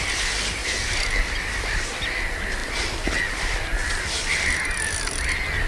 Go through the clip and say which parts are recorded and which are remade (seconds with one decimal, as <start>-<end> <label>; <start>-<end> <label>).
0.0-5.7 recorded